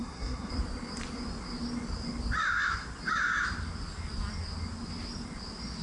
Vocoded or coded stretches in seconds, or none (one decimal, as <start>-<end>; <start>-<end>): 0.0-0.5